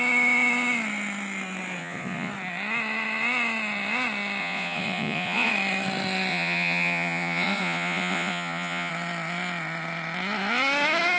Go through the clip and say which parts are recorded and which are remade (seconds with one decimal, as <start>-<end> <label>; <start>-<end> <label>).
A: 0.0-1.8 recorded; 1.8-2.3 remade; 2.3-4.4 recorded; 4.4-5.5 remade; 5.5-6.3 recorded; 6.3-8.9 remade; 8.9-11.2 recorded